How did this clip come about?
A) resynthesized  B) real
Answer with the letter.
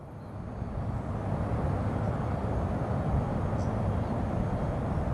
B